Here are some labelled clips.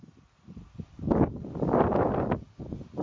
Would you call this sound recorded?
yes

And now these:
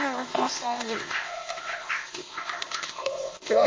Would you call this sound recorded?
no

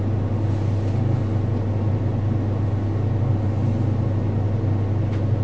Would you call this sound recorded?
yes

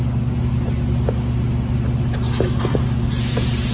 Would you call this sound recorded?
yes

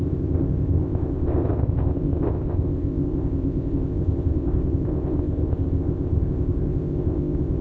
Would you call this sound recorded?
no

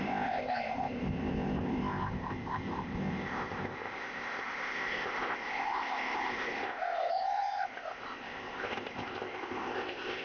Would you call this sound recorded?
no